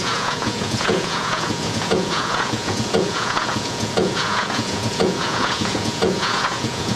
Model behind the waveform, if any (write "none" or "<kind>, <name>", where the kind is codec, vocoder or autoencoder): vocoder, Vocos